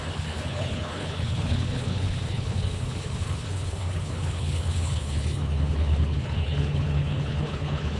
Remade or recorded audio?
remade